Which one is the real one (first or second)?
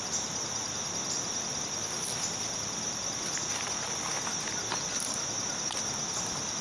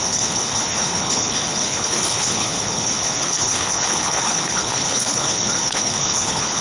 first